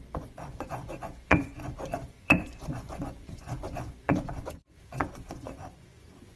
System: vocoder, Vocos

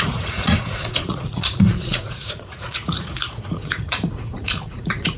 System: vocoder, Vocos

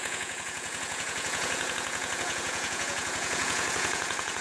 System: vocoder, Vocos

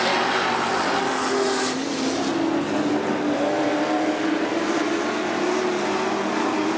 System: none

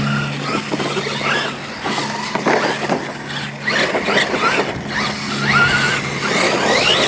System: none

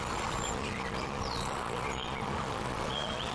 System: vocoder, Vocos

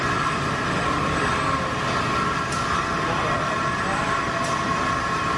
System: none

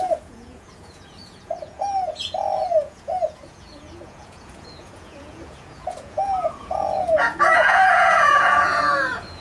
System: vocoder, Vocos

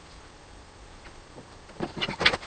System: vocoder, Vocos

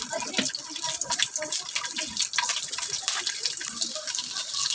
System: none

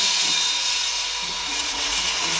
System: vocoder, Vocos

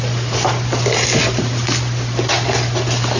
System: none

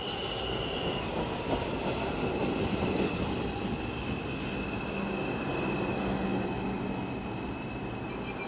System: none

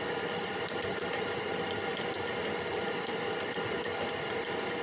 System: none